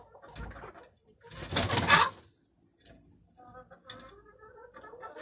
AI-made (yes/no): no